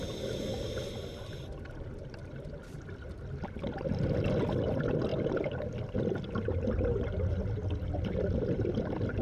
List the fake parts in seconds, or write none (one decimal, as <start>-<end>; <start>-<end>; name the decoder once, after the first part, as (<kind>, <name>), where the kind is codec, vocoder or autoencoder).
0.0-0.5 (vocoder, BigVGAN v2); 4.2-9.2

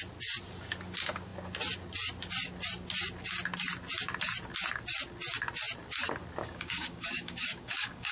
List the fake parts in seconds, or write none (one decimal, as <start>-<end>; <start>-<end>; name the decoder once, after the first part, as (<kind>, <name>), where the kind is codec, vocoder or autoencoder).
6.4-8.1 (codec, DAC)

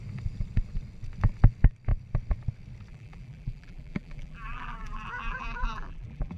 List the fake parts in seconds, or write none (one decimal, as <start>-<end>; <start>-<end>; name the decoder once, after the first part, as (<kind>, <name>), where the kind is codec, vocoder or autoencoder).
2.9-6.4 (vocoder, BigVGAN v2)

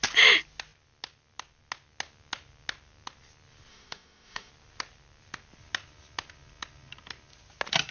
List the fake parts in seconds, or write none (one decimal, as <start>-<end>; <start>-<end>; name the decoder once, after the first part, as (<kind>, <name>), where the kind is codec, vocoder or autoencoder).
3.7-4.5 (autoencoder, DAC-VAE)

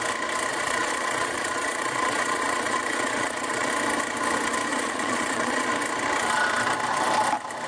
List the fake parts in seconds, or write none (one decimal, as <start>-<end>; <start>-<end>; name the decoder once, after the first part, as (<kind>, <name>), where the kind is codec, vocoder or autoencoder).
0.5-3.7 (vocoder, Vocos); 4.7-5.7

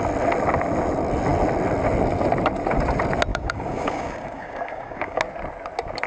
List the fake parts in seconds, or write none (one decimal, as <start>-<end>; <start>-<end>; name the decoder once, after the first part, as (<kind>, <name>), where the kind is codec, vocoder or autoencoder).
3.3-5.2 (codec, DAC)

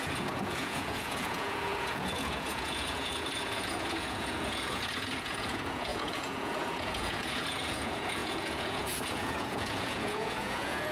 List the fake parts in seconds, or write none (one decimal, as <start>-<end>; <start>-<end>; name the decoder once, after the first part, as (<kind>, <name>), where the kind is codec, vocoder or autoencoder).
0.0-10.9 (vocoder, Vocos)

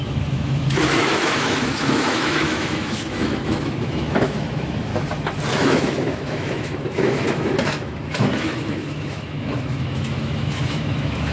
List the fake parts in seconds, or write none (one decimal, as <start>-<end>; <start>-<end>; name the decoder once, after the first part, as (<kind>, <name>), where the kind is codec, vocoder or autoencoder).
0.0-4.9 (autoencoder, DAC-VAE); 5.5-11.3